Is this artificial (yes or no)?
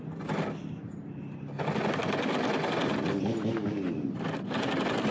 no